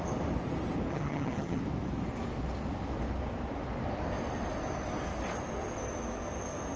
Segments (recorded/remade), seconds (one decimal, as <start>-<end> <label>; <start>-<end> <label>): 0.0-0.9 recorded; 0.9-1.6 remade; 1.6-6.8 recorded